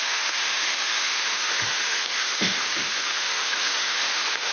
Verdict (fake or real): fake